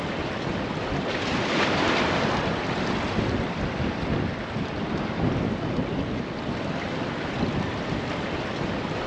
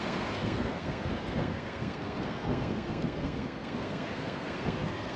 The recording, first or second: first